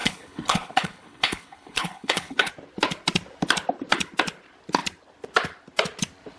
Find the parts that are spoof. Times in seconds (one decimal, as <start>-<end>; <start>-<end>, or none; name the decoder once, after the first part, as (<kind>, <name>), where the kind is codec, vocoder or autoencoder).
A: 0.0-2.5 (codec, HILCodec)